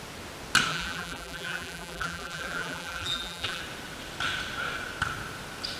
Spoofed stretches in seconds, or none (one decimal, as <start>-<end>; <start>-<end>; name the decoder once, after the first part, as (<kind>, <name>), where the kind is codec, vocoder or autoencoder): 0.7-3.6 (vocoder, BigVGAN v2)